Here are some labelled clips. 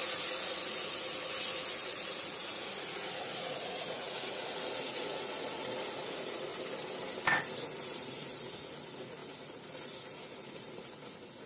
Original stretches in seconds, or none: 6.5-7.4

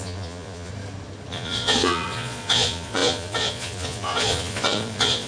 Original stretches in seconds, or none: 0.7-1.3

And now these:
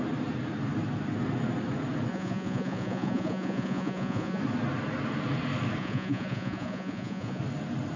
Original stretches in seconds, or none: 0.0-2.1; 4.4-5.8; 7.4-8.0

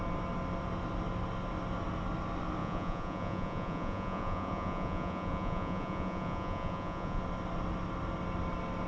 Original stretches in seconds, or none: 0.0-2.6; 7.2-8.9

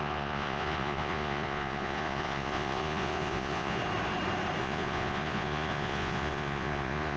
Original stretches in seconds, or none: 3.8-4.6

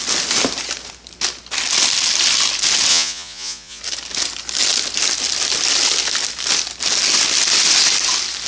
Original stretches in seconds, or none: 0.0-2.9; 3.8-8.5

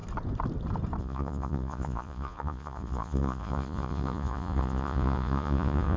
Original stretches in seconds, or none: 0.0-1.0

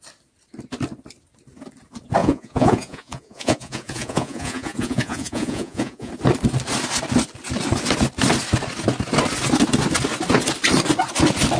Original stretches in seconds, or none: 0.0-2.2; 6.1-11.6